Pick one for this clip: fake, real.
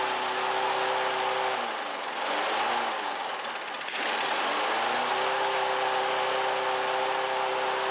real